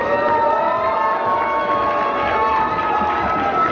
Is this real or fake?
real